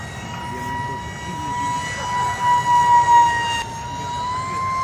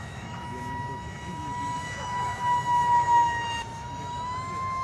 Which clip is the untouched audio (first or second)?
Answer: first